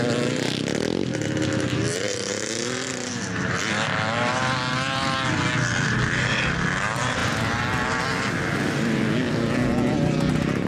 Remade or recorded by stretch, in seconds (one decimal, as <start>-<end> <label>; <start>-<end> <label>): 0.0-10.7 recorded